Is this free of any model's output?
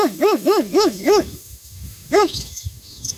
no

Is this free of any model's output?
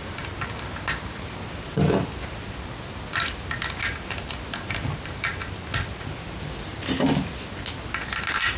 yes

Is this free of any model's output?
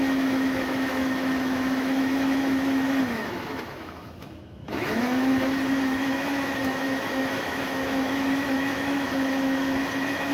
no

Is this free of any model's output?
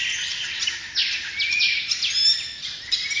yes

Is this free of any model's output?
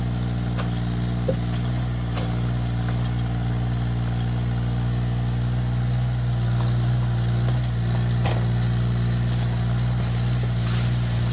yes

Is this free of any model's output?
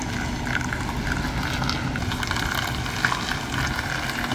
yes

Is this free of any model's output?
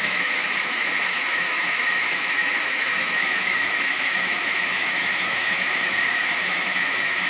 no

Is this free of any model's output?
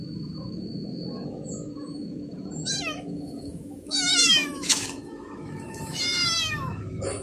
no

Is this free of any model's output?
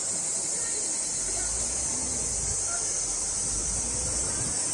yes